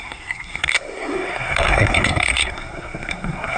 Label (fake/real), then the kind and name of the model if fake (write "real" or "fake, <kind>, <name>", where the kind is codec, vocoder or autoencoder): fake, codec, SNAC